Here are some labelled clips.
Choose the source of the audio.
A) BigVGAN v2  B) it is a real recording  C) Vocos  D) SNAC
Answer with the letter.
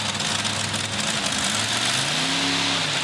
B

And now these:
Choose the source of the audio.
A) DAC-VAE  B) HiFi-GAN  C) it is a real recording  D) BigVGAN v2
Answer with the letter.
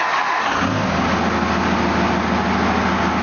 C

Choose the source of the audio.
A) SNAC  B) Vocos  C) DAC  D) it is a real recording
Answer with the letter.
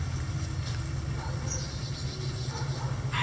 D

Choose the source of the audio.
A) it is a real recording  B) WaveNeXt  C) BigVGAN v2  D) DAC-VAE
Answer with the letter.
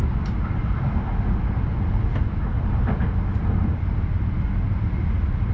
A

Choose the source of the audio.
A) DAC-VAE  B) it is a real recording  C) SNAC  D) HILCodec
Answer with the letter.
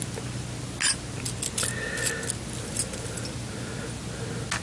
B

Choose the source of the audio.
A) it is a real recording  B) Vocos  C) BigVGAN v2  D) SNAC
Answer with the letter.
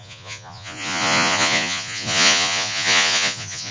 B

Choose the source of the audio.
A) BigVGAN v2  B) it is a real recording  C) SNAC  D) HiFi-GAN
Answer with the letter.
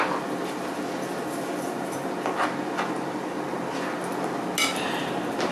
B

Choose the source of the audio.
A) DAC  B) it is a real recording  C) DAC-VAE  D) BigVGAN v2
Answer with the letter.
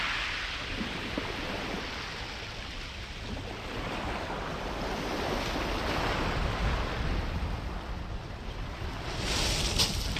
B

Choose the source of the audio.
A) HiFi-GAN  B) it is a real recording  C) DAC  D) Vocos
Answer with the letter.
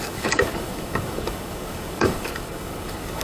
C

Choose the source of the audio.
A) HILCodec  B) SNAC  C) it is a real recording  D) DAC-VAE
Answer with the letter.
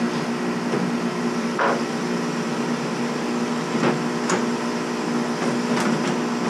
C